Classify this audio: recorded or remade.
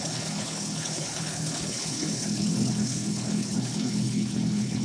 remade